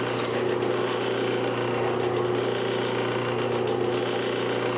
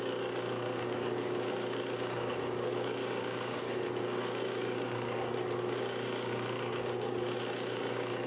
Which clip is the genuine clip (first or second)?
first